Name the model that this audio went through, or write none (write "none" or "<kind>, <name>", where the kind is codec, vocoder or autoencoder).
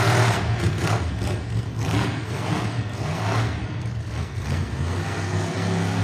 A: codec, SNAC